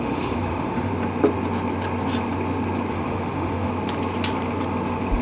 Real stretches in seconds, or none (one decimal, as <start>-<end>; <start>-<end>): 0.9-2.9; 3.7-5.2